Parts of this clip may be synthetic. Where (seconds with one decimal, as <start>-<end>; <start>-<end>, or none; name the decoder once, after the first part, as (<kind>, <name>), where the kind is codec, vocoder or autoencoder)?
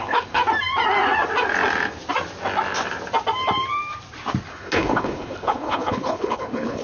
0.0-0.4 (codec, HILCodec); 4.5-6.8